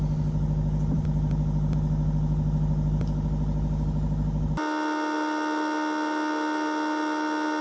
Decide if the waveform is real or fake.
real